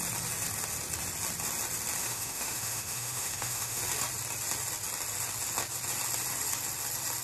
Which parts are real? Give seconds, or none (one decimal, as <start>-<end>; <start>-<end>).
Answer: 0.0-2.0; 3.8-7.2